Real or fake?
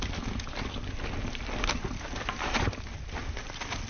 real